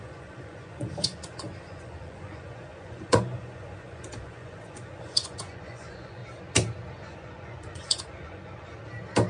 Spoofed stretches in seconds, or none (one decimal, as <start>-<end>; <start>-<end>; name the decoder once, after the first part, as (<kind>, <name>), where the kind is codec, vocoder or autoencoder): 0.0-6.2 (vocoder, Vocos); 6.9-8.7